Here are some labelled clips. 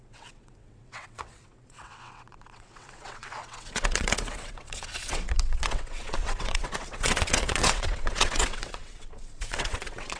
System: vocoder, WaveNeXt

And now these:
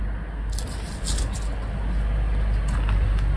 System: none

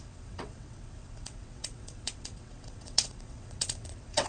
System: vocoder, WaveNeXt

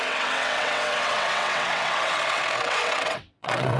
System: vocoder, WaveNeXt